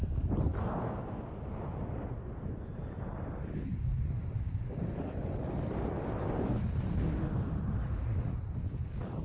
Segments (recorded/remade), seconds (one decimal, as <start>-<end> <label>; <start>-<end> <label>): 0.0-9.2 recorded